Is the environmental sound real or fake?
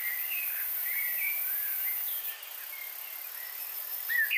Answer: real